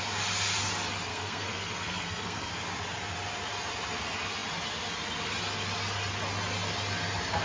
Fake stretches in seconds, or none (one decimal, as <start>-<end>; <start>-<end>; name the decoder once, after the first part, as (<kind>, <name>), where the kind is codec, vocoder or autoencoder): 1.1-2.5 (codec, SNAC)